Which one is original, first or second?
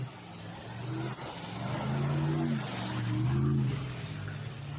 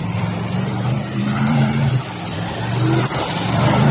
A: first